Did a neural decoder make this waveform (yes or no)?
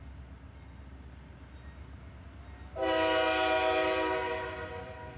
no